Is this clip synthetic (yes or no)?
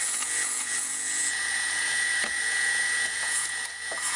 yes